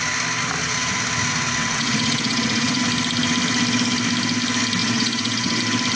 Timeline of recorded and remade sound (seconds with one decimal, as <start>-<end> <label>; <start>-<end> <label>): 0.0-1.6 recorded; 1.6-2.8 remade; 2.8-4.8 recorded; 4.8-5.6 remade; 5.6-6.0 recorded